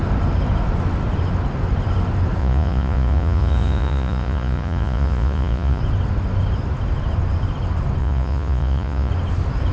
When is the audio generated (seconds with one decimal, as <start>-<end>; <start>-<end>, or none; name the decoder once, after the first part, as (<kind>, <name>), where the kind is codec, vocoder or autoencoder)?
2.4-5.8 (vocoder, Vocos); 8.0-9.1